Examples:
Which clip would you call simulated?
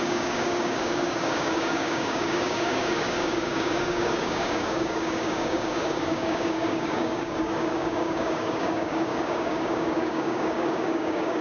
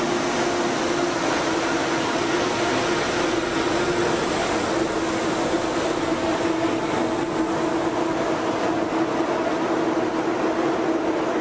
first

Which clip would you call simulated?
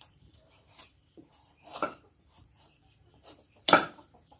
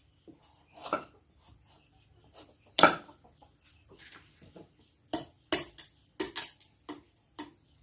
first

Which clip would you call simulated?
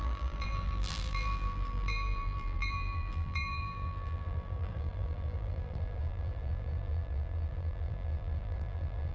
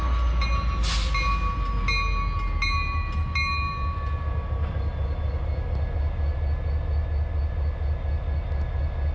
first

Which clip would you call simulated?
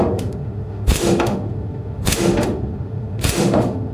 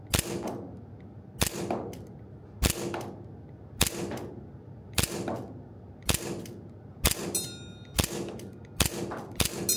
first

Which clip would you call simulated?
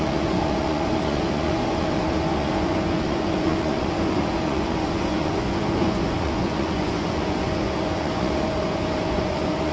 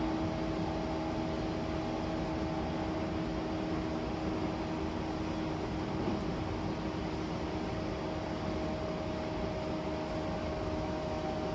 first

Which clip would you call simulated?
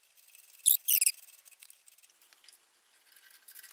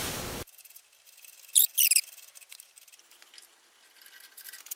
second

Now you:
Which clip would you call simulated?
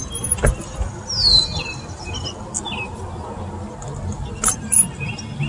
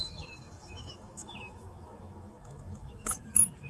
second